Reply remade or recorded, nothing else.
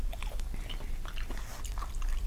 remade